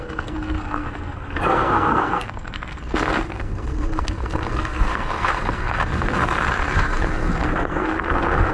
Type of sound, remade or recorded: remade